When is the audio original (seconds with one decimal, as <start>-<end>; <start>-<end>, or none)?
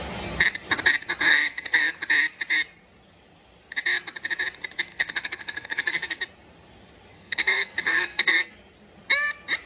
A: 0.0-1.3; 1.9-4.9; 6.2-7.1; 8.5-9.7